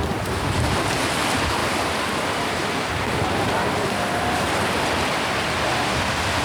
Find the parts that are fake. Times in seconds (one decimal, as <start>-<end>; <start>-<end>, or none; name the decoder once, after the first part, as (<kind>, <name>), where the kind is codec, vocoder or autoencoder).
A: 1.6-4.5 (vocoder, BigVGAN v2)

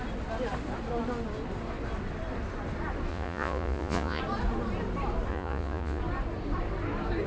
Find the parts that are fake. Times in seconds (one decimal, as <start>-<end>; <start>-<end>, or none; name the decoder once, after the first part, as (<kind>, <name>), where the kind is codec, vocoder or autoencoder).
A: 3.1-4.2 (vocoder, Vocos); 5.3-6.0

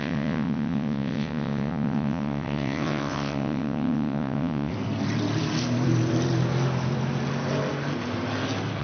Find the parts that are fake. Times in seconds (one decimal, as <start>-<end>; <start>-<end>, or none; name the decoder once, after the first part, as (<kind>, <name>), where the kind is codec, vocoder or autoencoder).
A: 0.0-4.7 (vocoder, WaveNeXt)

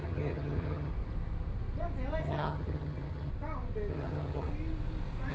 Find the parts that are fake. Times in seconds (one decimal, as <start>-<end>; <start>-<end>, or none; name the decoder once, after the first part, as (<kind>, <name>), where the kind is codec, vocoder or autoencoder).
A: 0.0-0.9 (vocoder, HiFi-GAN); 2.2-3.3; 3.9-4.5

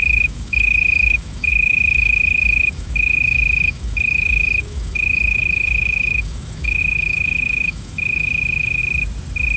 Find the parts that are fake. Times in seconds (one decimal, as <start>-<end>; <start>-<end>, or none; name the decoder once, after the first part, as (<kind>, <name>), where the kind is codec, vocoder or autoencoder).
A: 0.0-8.8 (autoencoder, DAC-VAE)

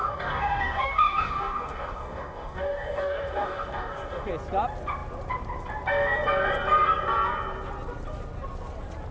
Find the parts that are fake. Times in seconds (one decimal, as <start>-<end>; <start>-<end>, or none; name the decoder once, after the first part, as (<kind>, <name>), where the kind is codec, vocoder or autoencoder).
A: 0.0-4.3 (codec, DAC)